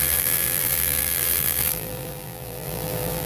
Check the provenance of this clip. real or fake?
fake